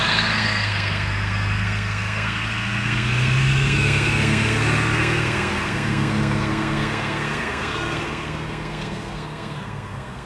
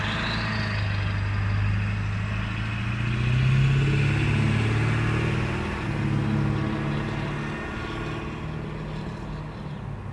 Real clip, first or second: second